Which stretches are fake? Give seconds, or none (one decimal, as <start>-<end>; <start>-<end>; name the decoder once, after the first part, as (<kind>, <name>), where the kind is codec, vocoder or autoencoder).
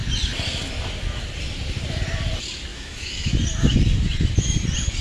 2.7-3.3 (autoencoder, DAC-VAE)